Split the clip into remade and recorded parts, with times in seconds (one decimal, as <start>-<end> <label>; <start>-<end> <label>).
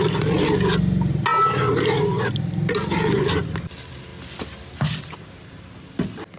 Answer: 0.0-6.4 recorded